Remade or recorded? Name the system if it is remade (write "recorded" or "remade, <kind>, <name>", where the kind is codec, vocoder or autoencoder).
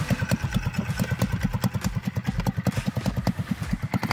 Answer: recorded